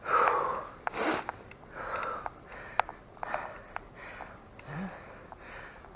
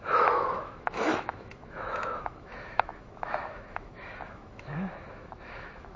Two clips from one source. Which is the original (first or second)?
first